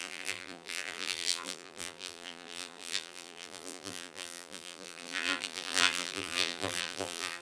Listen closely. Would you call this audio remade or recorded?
remade